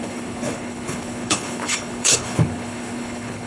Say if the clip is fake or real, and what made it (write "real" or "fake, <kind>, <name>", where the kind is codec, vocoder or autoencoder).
fake, codec, HILCodec